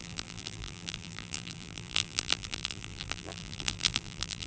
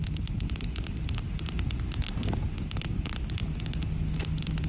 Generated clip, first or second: first